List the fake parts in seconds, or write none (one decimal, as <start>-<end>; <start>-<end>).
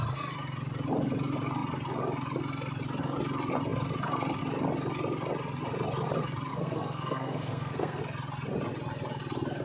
6.5-8.0